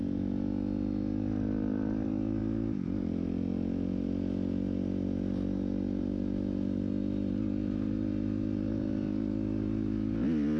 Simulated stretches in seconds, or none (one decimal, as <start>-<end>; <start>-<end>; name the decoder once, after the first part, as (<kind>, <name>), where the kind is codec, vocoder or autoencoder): none